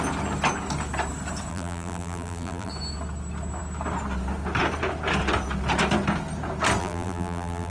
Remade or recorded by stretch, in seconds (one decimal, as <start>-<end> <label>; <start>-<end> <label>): 0.0-1.5 recorded; 1.5-2.7 remade; 2.7-6.8 recorded; 6.8-7.7 remade